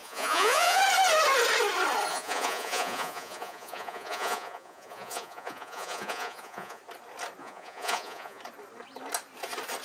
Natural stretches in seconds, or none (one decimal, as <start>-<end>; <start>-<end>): 0.8-2.1; 6.8-7.4; 8.4-9.8